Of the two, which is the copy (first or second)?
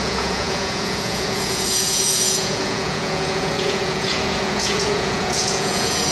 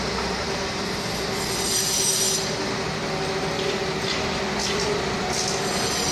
first